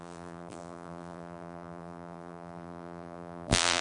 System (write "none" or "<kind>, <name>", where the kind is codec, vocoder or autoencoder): vocoder, BigVGAN v2